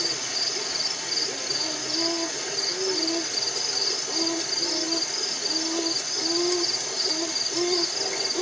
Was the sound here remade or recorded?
recorded